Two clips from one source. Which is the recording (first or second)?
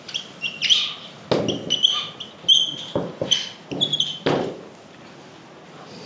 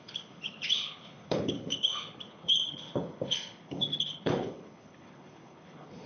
first